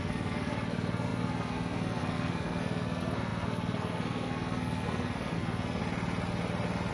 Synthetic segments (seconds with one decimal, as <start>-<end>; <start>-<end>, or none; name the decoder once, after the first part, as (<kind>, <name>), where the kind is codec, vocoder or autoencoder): 0.0-5.8 (codec, SNAC)